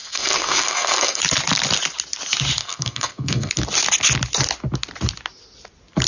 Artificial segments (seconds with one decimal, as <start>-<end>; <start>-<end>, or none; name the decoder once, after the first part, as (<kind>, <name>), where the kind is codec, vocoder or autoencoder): 0.0-1.2 (codec, SNAC); 2.6-3.5